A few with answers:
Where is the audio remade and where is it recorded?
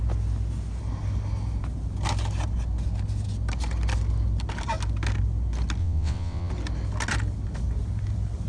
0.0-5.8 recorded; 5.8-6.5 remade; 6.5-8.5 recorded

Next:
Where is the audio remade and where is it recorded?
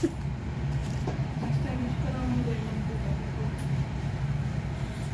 0.0-0.8 recorded; 0.8-3.9 remade; 3.9-5.1 recorded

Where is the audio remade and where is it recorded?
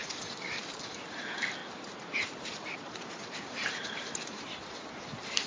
0.0-1.6 recorded; 1.6-4.7 remade; 4.7-5.5 recorded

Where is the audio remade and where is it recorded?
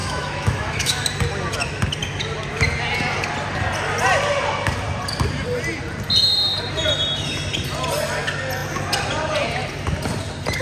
0.0-1.0 remade; 1.0-10.6 recorded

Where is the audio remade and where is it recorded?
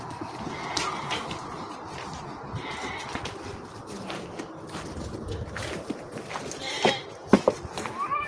0.0-8.3 recorded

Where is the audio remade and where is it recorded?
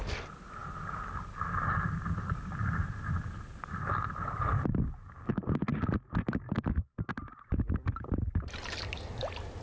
0.0-9.6 recorded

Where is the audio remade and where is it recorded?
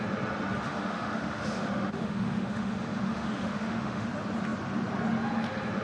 0.0-0.6 recorded; 0.6-4.1 remade; 4.1-5.8 recorded